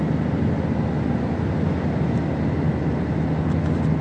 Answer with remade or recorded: recorded